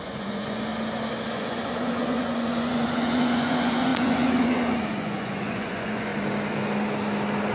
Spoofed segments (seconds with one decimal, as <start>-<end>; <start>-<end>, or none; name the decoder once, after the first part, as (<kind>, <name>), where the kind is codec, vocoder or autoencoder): 0.0-0.7 (vocoder, Vocos); 1.3-6.1

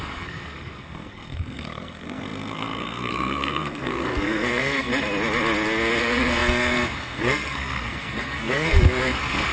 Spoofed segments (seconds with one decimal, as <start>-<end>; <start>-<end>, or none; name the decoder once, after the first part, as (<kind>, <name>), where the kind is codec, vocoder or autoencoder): 0.0-4.9 (codec, SNAC); 6.0-9.5

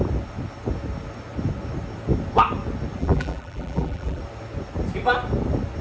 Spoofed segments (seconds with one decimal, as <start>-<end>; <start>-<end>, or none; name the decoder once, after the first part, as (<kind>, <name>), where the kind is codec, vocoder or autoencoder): 3.0-4.2 (vocoder, BigVGAN v2)

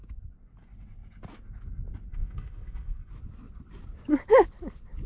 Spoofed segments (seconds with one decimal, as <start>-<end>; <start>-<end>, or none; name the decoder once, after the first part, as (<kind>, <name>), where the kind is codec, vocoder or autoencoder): 2.1-3.1 (codec, SNAC)

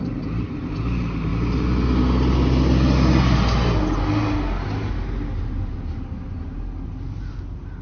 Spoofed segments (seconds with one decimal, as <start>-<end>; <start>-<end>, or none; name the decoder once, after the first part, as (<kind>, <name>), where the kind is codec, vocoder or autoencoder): none

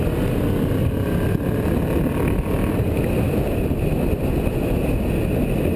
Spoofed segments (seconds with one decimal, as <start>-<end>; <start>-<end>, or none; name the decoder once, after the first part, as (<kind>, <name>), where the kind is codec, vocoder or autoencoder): 0.8-4.3 (vocoder, BigVGAN v2)

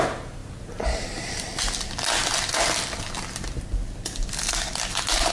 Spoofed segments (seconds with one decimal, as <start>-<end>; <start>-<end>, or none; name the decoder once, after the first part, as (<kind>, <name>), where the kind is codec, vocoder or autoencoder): none